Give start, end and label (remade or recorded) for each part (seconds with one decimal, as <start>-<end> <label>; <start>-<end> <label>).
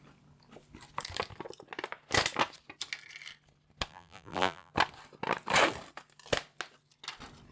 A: 0.0-3.9 recorded; 3.9-4.7 remade; 4.7-7.5 recorded